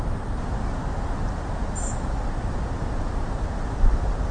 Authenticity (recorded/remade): recorded